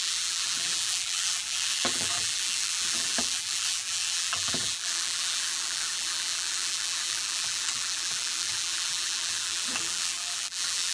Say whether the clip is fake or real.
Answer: fake